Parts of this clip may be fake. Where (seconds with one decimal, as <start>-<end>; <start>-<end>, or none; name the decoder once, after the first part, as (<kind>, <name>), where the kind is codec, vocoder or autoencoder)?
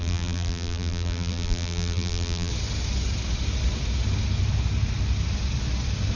0.0-2.5 (vocoder, BigVGAN v2)